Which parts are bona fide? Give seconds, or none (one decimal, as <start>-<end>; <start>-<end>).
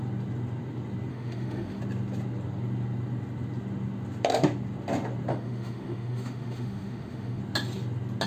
0.0-1.1; 1.8-5.3; 7.4-8.3